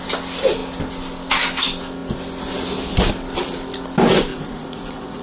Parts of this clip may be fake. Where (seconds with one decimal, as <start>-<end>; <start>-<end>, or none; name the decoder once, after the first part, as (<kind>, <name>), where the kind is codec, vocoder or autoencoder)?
4.3-5.2 (vocoder, Vocos)

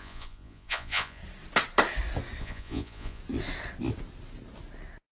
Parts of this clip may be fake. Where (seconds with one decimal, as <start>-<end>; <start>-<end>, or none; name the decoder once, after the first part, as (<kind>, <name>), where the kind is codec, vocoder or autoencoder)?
0.0-1.2 (vocoder, Vocos); 2.4-3.2

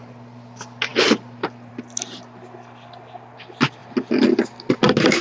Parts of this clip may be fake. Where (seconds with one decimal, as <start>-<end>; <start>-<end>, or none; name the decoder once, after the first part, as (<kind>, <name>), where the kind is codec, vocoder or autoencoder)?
none